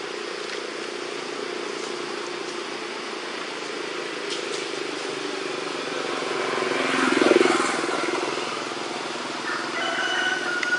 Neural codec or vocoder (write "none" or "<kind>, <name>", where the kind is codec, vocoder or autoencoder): none